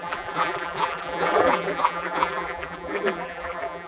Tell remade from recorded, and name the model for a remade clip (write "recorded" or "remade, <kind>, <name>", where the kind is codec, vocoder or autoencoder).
remade, vocoder, BigVGAN v2